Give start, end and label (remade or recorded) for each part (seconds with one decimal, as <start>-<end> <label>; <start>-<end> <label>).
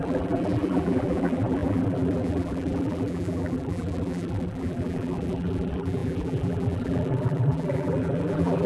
0.0-8.7 remade